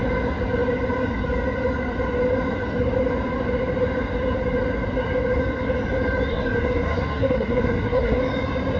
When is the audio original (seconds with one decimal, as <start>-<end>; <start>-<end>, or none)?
0.0-6.3; 8.2-8.8